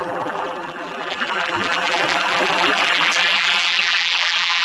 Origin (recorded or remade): remade